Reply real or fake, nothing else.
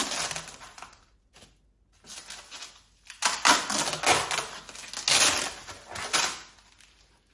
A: real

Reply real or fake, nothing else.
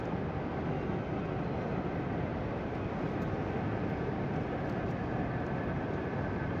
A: real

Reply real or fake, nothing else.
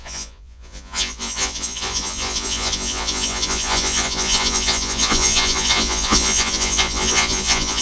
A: fake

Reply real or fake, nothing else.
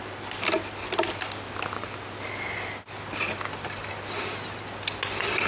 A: real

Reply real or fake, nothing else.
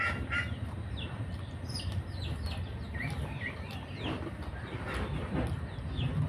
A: real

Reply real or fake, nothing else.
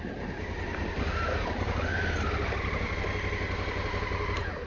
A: real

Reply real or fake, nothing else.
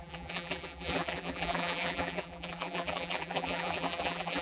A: fake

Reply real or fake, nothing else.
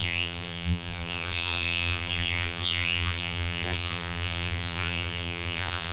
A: fake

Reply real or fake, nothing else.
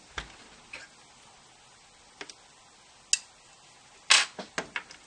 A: real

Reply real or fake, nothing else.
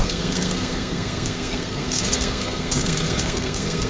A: fake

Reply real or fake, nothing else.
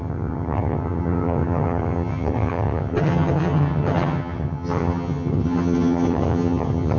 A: fake